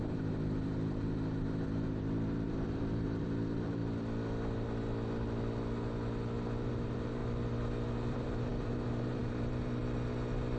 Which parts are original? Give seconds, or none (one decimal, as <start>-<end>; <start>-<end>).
3.8-6.7; 7.2-8.1; 9.8-10.6